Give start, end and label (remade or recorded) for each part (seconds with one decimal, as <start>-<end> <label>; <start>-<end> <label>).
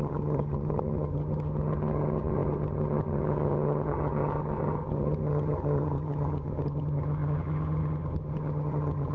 0.0-9.1 remade